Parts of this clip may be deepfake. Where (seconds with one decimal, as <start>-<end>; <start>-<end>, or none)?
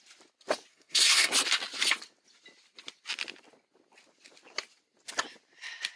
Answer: 0.7-1.3